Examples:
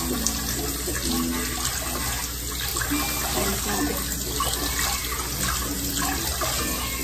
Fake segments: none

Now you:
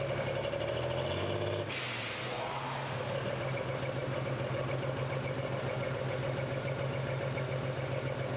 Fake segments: none

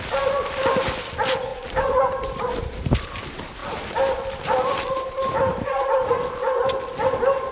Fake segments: 1.5-2.6 (vocoder, BigVGAN v2)

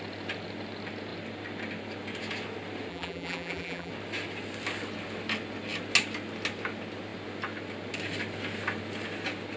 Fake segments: 2.9-3.9 (vocoder, BigVGAN v2)

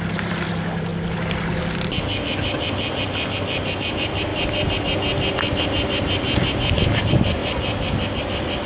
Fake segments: 0.0-0.9 (vocoder, BigVGAN v2); 3.8-4.3; 7.0-8.7

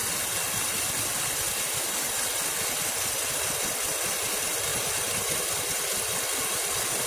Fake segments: none